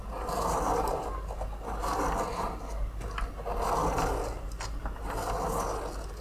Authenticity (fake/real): real